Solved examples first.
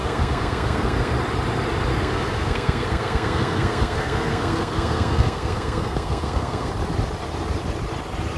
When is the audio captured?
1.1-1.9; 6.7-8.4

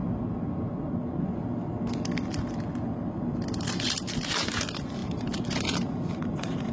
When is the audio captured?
0.0-3.5

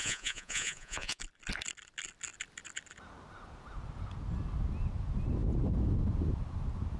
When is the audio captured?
1.2-7.0

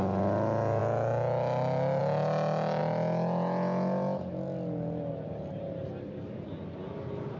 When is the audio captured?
0.0-7.4

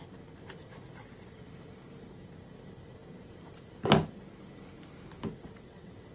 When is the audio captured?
0.0-1.0; 1.5-5.3

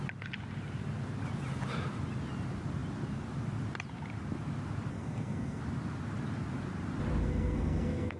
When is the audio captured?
0.0-4.9; 5.6-7.2